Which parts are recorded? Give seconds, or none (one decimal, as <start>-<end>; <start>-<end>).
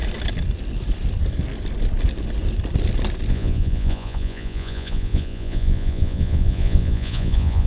0.0-3.3